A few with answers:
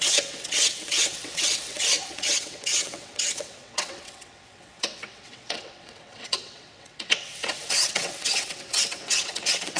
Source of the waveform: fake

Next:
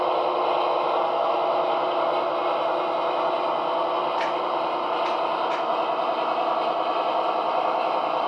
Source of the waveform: real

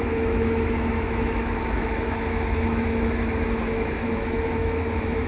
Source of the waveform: fake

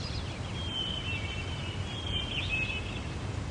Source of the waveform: real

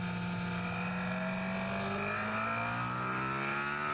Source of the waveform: real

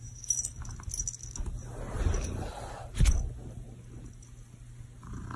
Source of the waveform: real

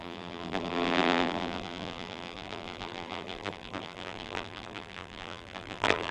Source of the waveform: fake